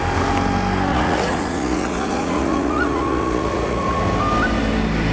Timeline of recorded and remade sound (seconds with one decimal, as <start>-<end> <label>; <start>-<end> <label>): 0.0-0.9 recorded; 0.9-4.0 remade; 4.0-5.1 recorded